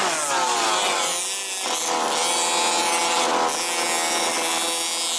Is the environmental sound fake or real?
real